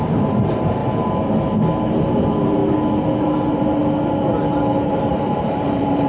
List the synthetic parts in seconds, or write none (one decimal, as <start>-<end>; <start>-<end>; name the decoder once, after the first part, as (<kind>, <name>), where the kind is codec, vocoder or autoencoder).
0.0-0.8 (vocoder, BigVGAN v2); 2.0-2.6; 3.2-3.8; 5.1-6.1